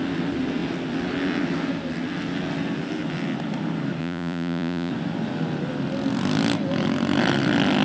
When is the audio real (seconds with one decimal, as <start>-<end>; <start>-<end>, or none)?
0.0-4.0; 4.9-7.8